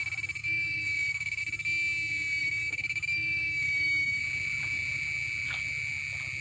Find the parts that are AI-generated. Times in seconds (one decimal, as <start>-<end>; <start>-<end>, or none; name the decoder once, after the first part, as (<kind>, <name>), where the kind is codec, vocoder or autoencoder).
0.4-1.4 (autoencoder, DAC-VAE); 2.4-4.2